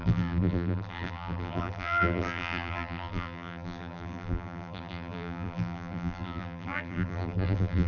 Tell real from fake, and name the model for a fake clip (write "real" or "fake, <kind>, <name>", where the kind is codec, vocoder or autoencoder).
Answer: fake, vocoder, BigVGAN v2